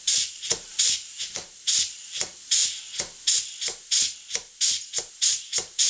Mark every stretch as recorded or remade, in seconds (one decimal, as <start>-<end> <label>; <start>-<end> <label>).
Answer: 0.0-2.6 remade; 2.6-5.1 recorded; 5.1-5.9 remade